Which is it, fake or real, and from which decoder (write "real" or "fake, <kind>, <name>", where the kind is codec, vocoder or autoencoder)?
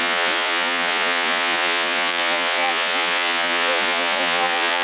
fake, vocoder, Vocos